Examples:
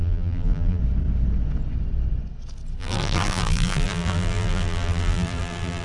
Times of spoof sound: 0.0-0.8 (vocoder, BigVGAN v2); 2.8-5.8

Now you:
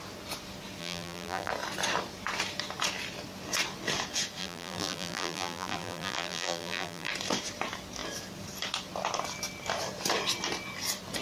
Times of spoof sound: 0.8-1.5 (vocoder, BigVGAN v2); 4.4-7.1

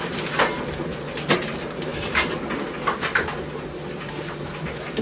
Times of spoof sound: none

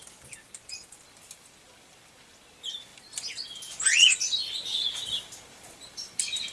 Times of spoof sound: none

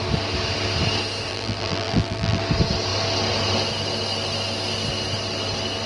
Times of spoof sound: 1.3-2.4 (vocoder, BigVGAN v2)

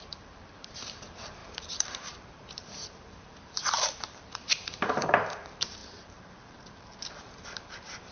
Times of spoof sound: 0.0-8.1 (vocoder, BigVGAN v2)